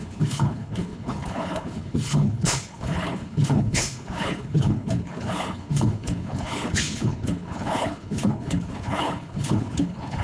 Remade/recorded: remade